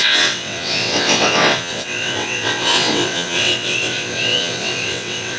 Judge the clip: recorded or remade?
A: remade